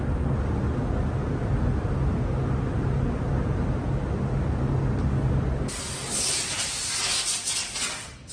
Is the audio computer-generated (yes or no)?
no